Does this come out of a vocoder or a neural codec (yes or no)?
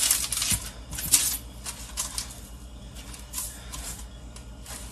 no